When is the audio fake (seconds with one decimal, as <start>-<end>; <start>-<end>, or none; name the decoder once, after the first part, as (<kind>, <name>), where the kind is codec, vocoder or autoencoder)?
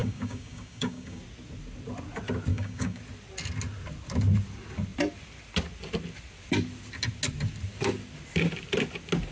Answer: 0.0-1.2 (codec, DAC); 2.5-3.0